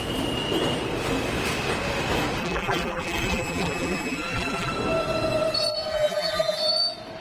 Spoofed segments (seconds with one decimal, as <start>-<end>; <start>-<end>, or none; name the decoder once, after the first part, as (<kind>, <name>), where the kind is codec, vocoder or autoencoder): 2.4-4.7 (vocoder, BigVGAN v2); 5.9-6.6